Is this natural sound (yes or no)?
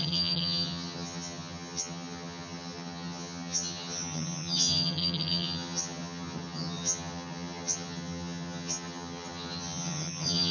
no